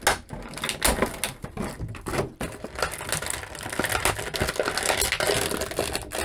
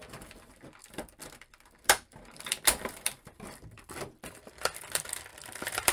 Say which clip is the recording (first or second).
first